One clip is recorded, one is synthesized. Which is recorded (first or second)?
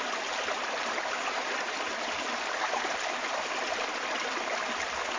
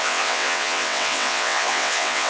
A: first